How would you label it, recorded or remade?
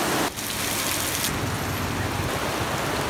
recorded